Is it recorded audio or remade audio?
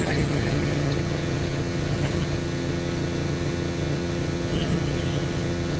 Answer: remade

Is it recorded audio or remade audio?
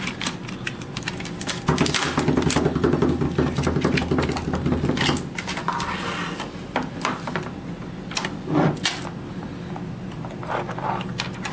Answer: recorded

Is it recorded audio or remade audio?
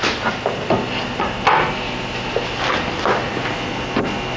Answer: recorded